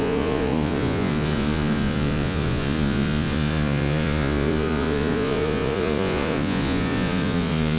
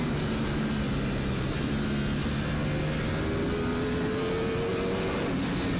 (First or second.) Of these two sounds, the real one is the second